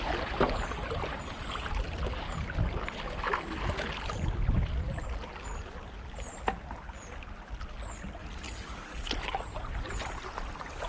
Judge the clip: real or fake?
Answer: real